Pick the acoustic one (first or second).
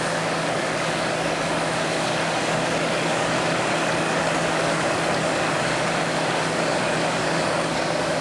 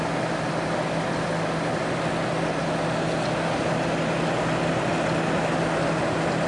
second